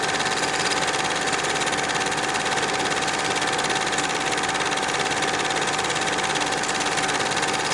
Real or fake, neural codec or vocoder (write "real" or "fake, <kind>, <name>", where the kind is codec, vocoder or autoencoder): real